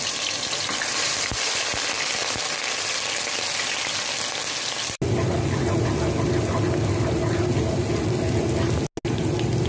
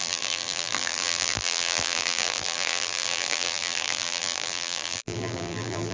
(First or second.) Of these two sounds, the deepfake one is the second